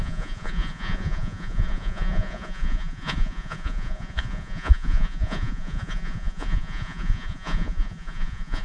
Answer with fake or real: fake